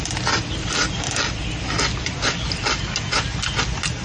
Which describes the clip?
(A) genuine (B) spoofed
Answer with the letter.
A